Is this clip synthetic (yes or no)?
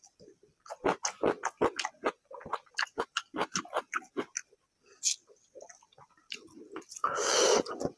no